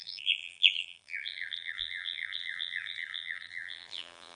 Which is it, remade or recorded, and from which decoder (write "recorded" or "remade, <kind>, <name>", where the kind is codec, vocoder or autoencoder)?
remade, vocoder, BigVGAN v2